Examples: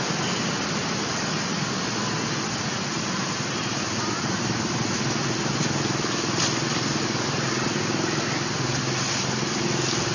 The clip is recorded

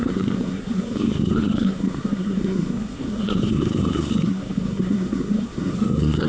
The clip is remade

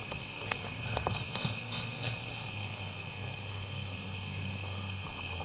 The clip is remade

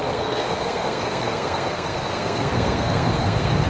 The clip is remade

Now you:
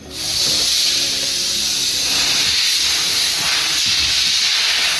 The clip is recorded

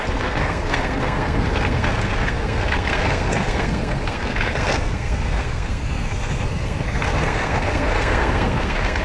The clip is remade